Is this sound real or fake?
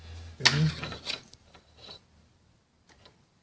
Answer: real